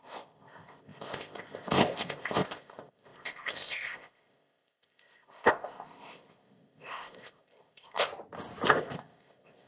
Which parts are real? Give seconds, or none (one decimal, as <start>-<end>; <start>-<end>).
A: 8.1-8.7